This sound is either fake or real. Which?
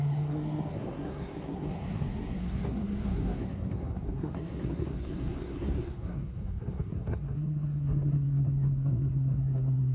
fake